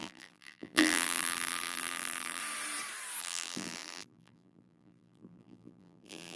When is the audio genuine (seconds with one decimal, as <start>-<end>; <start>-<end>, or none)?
2.4-3.2